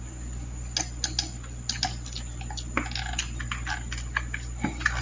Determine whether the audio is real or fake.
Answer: real